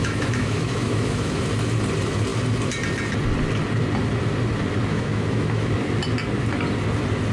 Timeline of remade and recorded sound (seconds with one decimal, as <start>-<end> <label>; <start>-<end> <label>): 0.0-1.4 remade; 1.4-4.9 recorded; 4.9-5.7 remade; 5.7-7.3 recorded